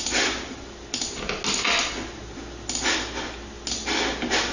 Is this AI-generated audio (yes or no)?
no